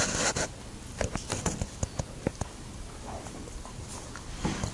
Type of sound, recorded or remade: recorded